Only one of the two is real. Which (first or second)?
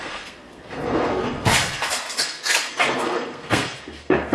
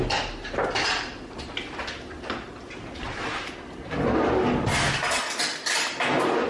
second